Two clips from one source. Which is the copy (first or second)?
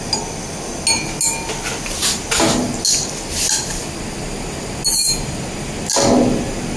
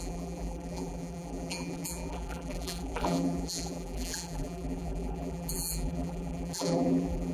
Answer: second